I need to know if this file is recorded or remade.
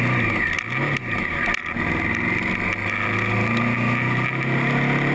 recorded